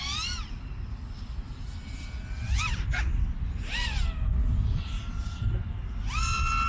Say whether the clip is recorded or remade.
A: recorded